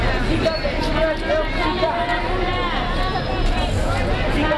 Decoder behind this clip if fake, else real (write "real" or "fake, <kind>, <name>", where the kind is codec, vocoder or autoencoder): real